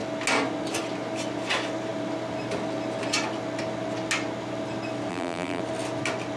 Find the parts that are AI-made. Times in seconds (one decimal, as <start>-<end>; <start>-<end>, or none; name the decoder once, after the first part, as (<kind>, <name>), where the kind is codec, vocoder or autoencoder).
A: 5.1-5.6 (vocoder, BigVGAN v2)